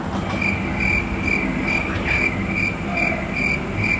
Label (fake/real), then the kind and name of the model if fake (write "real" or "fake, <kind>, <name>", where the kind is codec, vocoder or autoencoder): real